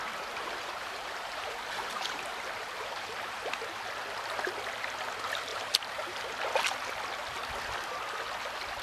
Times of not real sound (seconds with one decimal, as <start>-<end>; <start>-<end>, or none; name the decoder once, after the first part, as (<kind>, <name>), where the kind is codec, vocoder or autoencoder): 0.0-3.5 (vocoder, BigVGAN v2); 5.5-6.3